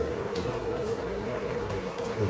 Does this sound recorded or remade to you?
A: remade